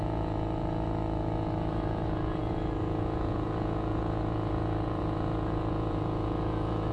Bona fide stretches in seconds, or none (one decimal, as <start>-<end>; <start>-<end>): none